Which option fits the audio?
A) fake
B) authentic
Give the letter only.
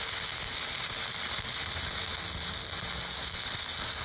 B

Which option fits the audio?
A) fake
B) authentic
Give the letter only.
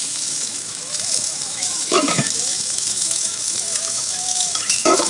A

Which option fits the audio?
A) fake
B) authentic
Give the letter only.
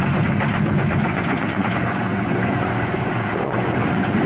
A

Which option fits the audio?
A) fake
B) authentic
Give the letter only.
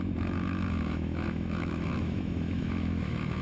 A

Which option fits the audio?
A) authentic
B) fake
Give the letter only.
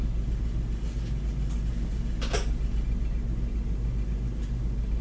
A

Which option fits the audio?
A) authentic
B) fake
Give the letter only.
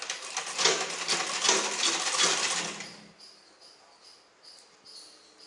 A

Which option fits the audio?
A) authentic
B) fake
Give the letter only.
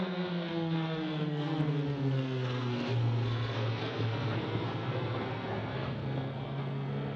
B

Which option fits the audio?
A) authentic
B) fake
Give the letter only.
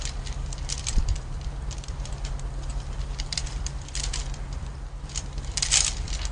B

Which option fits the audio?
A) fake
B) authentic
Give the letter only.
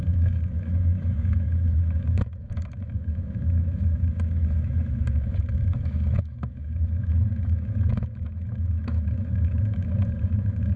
A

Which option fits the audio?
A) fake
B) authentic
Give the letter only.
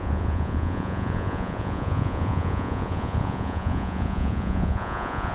A